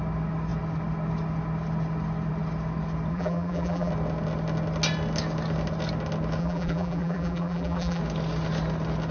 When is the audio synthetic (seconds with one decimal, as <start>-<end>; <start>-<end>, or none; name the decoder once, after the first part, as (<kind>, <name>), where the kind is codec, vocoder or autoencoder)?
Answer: 3.1-3.9 (vocoder, BigVGAN v2); 6.4-8.0